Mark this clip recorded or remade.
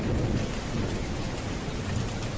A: recorded